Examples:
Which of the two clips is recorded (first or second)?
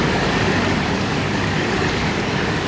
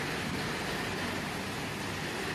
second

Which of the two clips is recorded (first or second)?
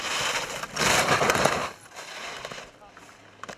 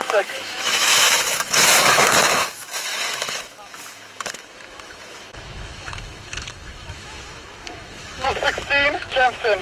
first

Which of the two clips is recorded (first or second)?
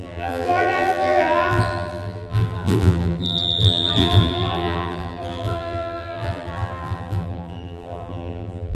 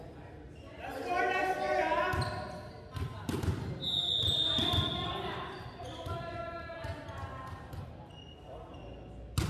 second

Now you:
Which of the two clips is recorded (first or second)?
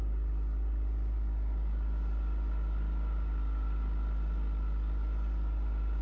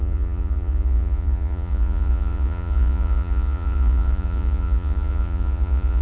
first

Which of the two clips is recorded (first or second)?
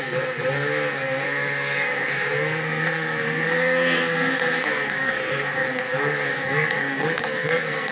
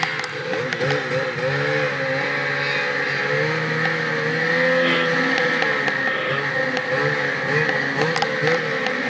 second